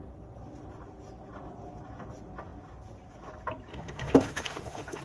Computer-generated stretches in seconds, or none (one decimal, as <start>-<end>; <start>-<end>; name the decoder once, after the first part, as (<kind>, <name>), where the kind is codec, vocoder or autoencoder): 3.7-5.0 (autoencoder, DAC-VAE)